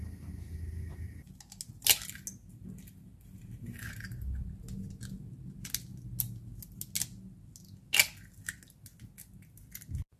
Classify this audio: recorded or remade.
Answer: recorded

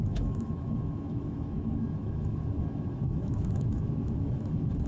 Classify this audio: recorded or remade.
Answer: remade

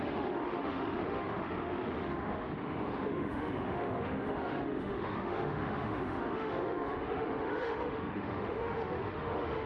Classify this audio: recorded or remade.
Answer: remade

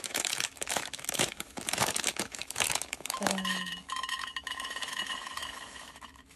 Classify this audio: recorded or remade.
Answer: remade